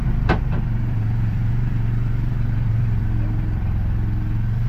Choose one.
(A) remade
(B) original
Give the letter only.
A